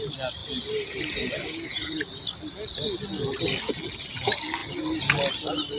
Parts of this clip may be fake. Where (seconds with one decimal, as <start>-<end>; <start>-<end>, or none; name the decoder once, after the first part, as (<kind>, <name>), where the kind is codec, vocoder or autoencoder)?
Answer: none